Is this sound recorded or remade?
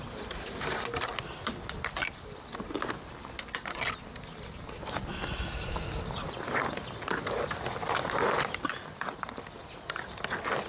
recorded